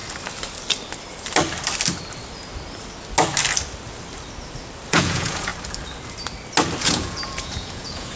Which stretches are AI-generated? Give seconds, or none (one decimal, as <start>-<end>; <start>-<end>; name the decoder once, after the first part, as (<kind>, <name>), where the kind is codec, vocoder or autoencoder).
4.9-5.5 (vocoder, Vocos); 6.8-8.2